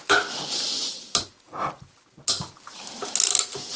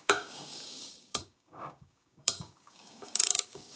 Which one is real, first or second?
first